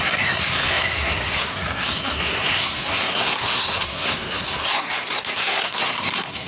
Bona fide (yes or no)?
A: no